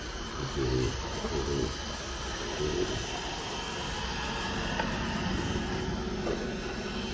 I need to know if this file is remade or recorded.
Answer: recorded